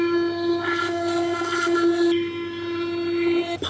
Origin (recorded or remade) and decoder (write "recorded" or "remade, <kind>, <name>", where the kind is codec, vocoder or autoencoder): recorded